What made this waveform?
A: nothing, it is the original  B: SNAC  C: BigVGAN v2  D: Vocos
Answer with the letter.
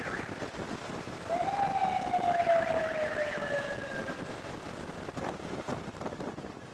A